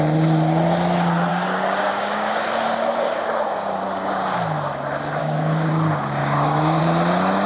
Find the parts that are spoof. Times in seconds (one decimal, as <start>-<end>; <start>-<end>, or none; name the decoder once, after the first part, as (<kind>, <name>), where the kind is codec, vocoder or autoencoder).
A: 1.3-2.5 (codec, DAC); 5.2-5.7; 6.2-6.8